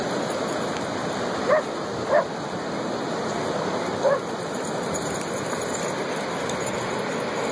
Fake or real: real